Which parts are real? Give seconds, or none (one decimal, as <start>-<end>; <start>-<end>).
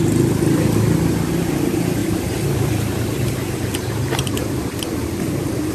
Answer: 0.0-2.0